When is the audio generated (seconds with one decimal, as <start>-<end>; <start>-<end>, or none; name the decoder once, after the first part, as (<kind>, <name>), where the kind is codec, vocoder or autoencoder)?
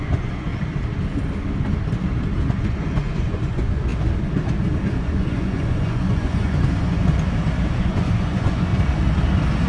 0.0-0.5 (vocoder, Vocos); 2.5-3.9; 4.9-7.0; 7.8-8.7